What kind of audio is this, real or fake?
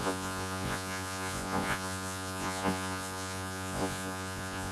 fake